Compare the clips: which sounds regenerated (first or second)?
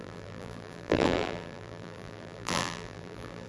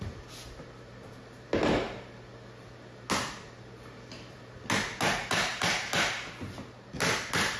first